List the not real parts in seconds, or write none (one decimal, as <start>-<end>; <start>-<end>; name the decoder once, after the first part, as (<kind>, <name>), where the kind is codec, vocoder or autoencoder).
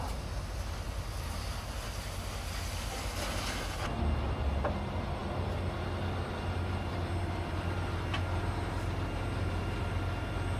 none